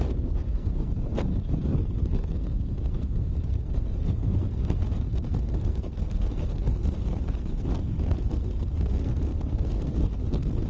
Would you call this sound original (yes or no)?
no